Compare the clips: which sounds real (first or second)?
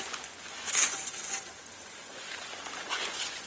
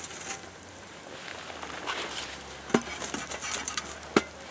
second